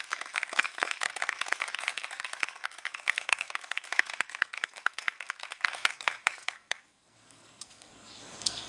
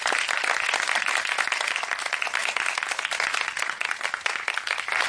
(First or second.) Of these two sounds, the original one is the second